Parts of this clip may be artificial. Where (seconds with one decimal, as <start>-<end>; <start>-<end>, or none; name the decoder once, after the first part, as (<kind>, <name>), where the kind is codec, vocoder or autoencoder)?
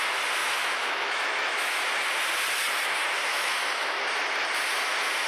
0.4-1.8 (autoencoder, DAC-VAE); 3.3-4.0